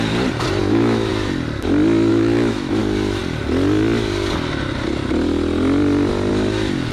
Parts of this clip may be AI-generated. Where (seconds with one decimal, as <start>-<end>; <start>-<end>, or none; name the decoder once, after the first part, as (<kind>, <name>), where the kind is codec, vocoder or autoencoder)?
0.6-1.1 (autoencoder, DAC-VAE); 2.1-2.8